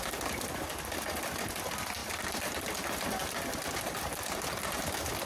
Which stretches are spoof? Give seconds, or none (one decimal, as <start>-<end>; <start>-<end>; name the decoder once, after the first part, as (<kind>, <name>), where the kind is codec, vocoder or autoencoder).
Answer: none